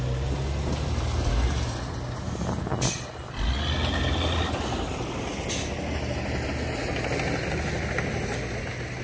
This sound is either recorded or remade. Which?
recorded